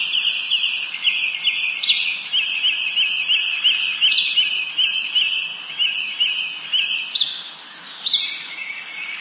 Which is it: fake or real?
real